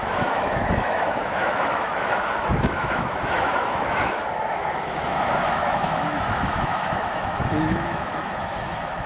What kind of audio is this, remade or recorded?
remade